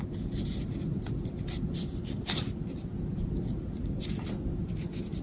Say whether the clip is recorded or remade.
recorded